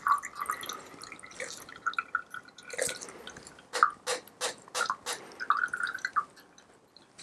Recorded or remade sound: recorded